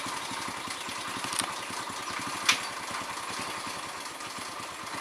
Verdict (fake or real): real